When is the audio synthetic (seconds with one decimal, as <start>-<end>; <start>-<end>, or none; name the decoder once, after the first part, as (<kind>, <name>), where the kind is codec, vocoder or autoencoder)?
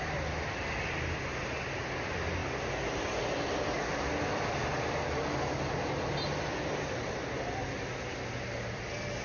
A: none